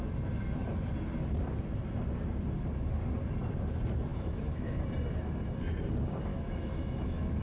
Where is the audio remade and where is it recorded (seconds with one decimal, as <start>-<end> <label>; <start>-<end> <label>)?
0.0-4.1 recorded; 4.1-4.8 remade; 4.8-6.3 recorded; 6.3-7.4 remade